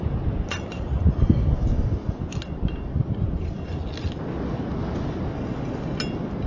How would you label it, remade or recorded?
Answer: recorded